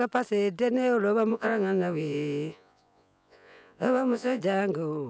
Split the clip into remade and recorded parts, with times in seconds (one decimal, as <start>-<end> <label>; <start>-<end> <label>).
0.0-1.3 recorded; 1.3-4.4 remade; 4.4-5.1 recorded